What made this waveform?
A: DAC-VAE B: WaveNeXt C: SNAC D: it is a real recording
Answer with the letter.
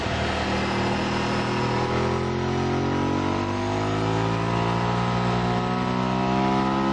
D